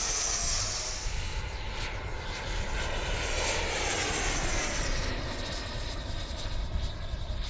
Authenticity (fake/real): real